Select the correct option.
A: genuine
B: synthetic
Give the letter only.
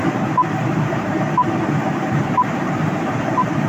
B